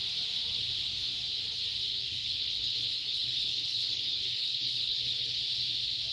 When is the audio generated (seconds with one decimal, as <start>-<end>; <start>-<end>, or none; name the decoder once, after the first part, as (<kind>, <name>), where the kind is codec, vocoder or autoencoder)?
1.9-5.4 (codec, HILCodec)